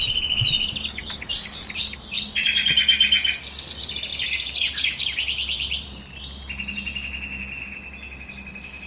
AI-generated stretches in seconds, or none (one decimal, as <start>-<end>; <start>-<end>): 1.0-1.8; 4.1-6.2